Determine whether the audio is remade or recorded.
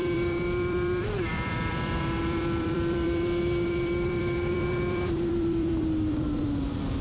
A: remade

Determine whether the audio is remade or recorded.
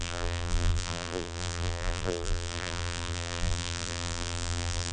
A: remade